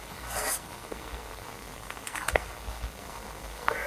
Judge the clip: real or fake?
fake